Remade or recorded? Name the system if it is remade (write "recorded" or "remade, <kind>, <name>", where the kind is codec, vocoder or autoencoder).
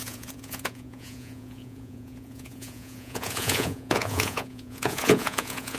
remade, vocoder, Vocos